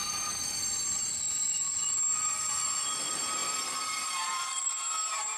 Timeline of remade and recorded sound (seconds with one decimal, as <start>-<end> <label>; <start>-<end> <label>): 0.0-0.6 remade; 0.6-3.4 recorded; 3.4-4.7 remade; 4.7-5.4 recorded